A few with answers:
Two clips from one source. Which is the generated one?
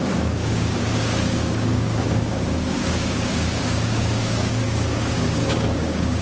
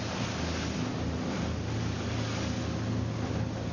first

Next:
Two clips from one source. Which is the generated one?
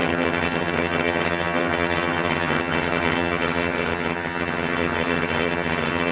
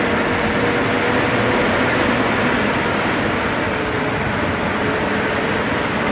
first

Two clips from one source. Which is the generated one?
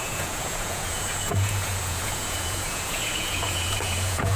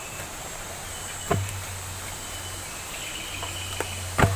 first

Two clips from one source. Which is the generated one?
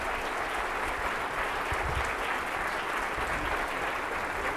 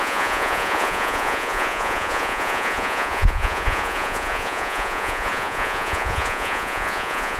second